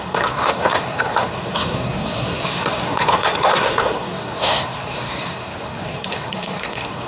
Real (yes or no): no